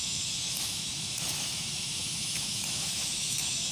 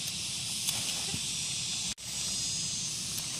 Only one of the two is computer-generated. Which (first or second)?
first